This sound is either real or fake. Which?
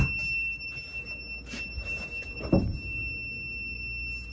real